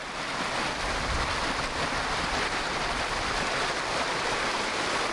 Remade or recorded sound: remade